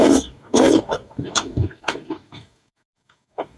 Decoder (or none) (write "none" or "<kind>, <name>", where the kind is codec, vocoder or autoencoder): codec, DAC